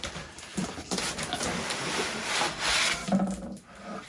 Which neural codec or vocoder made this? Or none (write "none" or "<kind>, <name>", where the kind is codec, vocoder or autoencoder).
none